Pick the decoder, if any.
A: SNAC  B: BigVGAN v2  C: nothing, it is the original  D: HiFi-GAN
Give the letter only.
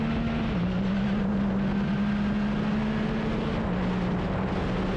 C